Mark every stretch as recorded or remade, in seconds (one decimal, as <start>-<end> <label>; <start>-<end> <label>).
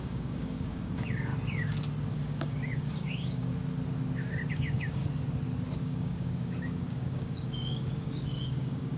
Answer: 0.0-1.3 remade; 1.3-2.1 recorded; 2.1-3.5 remade; 3.5-4.5 recorded; 4.5-5.0 remade; 5.0-5.8 recorded; 5.8-9.0 remade